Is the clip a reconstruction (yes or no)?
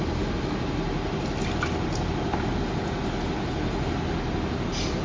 no